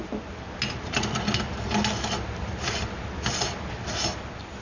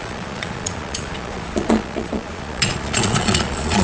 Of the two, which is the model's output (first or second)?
second